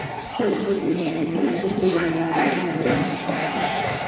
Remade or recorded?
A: remade